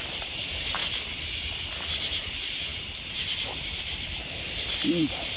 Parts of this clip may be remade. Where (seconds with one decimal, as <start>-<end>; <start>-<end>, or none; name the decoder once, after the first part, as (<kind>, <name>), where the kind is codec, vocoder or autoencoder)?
0.0-0.8 (vocoder, BigVGAN v2); 2.3-5.4